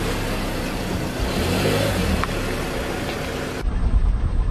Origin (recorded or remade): recorded